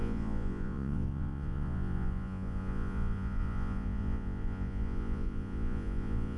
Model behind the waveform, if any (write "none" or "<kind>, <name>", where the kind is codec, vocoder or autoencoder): vocoder, Vocos